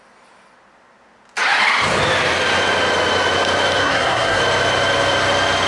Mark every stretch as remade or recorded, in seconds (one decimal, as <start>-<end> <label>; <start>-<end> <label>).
0.0-3.8 recorded; 3.8-4.4 remade; 4.4-5.7 recorded